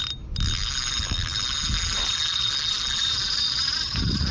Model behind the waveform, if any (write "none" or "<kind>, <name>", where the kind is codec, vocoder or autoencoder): none